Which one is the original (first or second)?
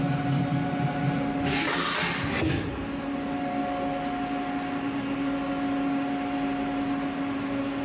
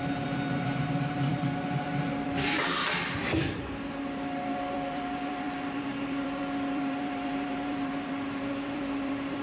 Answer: first